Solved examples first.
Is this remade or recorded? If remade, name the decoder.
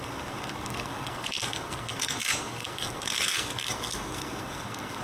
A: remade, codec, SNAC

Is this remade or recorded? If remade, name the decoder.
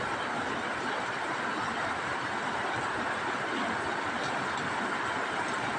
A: recorded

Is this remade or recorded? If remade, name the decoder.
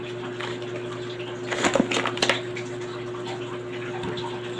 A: recorded